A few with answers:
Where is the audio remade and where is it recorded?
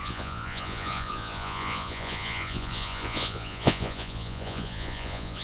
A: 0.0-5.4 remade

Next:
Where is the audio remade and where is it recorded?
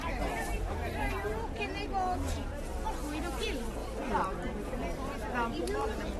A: 0.0-6.2 recorded